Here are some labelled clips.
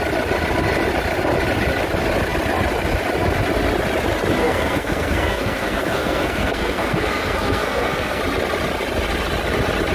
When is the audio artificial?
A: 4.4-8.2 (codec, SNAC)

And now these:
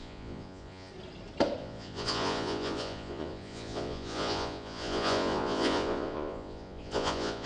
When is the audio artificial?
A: 0.0-0.9 (vocoder, Vocos); 1.6-7.5

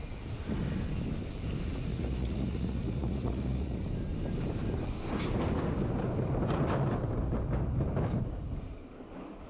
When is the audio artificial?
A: 1.9-3.8 (vocoder, Vocos)

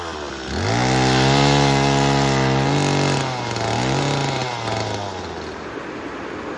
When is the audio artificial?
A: none

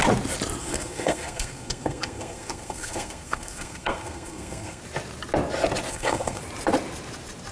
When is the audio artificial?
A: 0.6-4.8 (codec, SNAC); 5.9-6.4